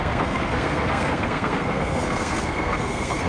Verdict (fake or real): fake